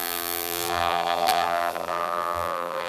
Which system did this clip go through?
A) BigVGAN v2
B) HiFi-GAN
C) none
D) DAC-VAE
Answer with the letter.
A